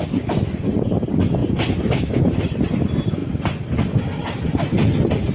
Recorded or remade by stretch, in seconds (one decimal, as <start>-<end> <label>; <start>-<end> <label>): 0.0-1.4 recorded; 1.4-2.2 remade; 2.2-5.3 recorded